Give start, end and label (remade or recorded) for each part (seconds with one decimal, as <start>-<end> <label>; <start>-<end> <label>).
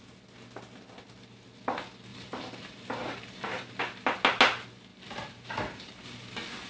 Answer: 0.0-2.1 recorded; 2.1-3.8 remade; 3.8-4.9 recorded; 4.9-6.0 remade; 6.0-6.7 recorded